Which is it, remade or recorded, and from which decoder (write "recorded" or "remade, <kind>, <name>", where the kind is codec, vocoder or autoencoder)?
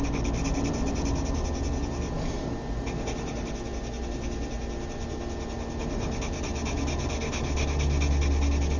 recorded